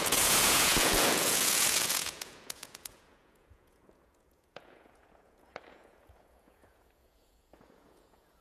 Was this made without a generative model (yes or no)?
no